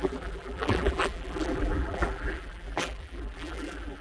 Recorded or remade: remade